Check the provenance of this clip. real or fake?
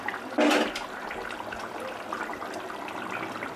real